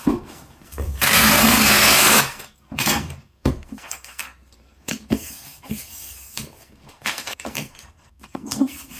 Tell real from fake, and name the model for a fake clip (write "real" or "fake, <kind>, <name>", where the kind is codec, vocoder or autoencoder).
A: fake, codec, SNAC